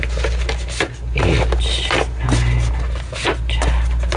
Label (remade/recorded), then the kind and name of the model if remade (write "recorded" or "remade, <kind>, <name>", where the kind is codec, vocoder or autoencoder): recorded